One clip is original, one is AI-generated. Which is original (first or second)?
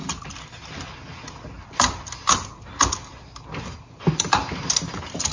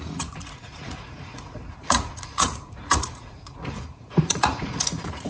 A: first